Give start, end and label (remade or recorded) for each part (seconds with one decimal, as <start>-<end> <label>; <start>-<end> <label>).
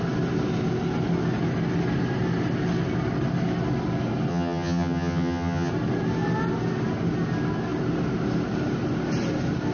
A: 0.0-4.3 recorded; 4.3-5.7 remade; 5.7-9.7 recorded